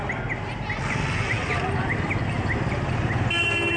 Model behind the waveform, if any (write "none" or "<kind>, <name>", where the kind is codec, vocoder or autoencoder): none